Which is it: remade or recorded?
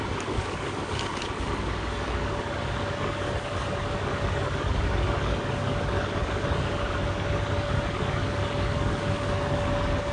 remade